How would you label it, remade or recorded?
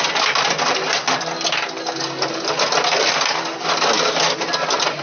recorded